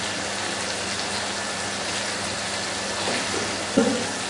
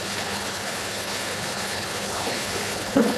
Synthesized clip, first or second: second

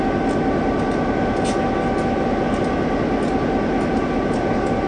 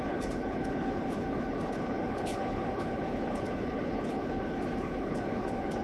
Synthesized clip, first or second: second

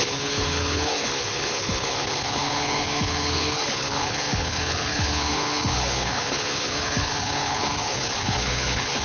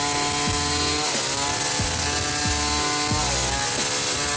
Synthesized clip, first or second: first